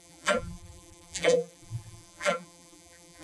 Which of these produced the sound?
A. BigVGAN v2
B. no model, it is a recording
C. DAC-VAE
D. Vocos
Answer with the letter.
A